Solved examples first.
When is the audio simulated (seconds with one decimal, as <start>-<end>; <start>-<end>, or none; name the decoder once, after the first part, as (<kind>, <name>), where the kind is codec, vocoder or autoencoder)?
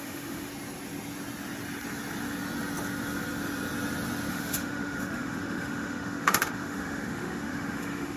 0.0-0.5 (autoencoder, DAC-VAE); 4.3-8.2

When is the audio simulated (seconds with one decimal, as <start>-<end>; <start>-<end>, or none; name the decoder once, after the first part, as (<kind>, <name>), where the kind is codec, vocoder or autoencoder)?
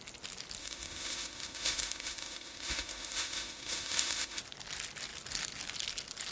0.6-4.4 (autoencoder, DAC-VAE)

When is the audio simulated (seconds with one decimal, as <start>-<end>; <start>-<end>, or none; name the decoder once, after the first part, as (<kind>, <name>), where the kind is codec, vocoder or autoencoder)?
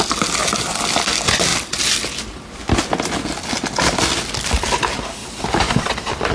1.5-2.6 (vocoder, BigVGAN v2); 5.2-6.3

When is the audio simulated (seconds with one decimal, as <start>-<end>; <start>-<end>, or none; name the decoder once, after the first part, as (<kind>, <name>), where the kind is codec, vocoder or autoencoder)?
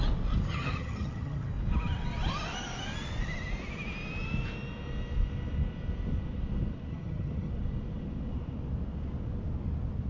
0.5-1.5 (vocoder, HiFi-GAN); 6.9-7.5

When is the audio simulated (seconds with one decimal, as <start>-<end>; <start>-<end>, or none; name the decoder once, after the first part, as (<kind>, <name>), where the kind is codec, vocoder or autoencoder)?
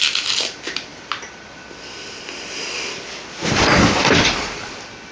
none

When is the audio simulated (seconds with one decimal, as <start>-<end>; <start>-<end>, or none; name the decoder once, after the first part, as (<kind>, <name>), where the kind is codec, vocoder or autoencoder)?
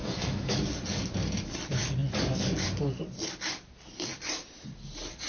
0.0-0.6 (autoencoder, DAC-VAE)